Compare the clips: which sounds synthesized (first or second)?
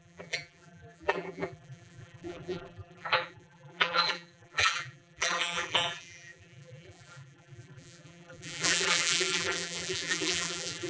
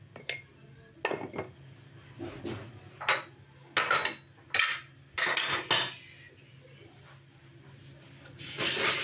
first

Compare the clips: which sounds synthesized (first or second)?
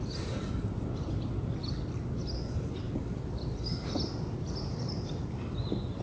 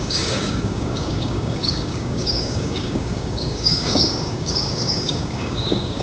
second